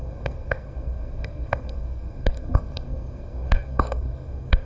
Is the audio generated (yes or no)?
yes